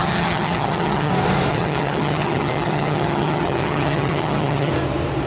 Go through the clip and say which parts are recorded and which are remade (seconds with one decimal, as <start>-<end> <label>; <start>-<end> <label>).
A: 0.0-1.1 remade; 1.1-1.5 recorded; 1.5-4.7 remade; 4.7-5.3 recorded